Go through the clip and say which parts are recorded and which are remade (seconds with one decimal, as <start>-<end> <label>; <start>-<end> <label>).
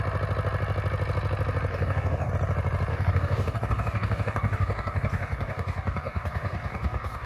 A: 0.0-1.7 recorded; 1.7-2.3 remade; 2.3-2.9 recorded; 2.9-7.3 remade